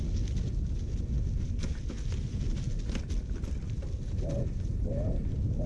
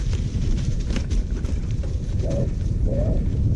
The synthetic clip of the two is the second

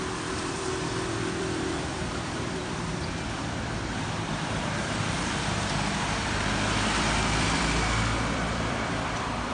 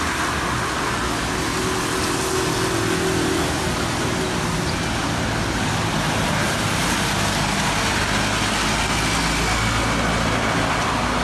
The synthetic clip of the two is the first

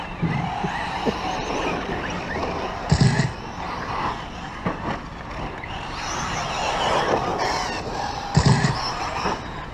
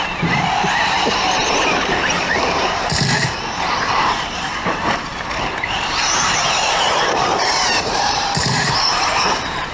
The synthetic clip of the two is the second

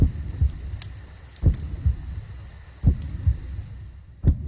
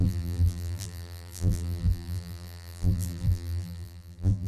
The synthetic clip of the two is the second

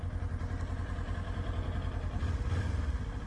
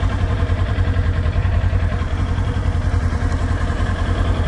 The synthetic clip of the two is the second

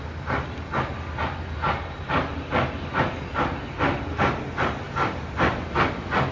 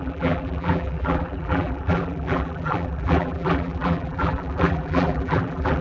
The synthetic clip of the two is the second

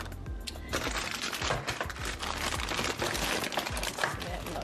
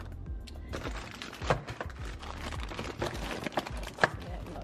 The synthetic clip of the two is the second